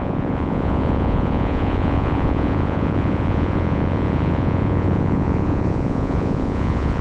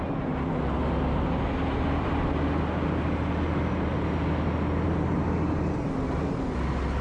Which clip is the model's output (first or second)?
first